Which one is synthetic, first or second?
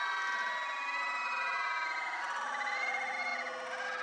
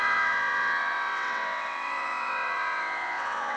second